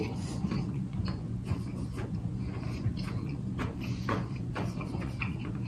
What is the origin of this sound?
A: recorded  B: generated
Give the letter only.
B